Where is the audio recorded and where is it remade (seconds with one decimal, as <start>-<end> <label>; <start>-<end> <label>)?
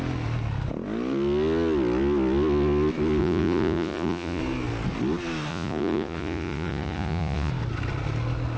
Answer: 0.0-3.2 recorded; 3.2-4.4 remade; 4.4-5.5 recorded; 5.5-7.5 remade; 7.5-8.6 recorded